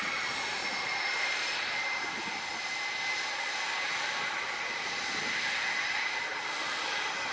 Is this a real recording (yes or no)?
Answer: yes